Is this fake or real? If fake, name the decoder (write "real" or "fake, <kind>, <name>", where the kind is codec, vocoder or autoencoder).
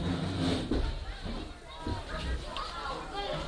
real